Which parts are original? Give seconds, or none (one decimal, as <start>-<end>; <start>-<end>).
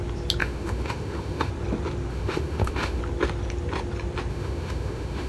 0.0-0.4; 1.5-2.1; 3.0-4.3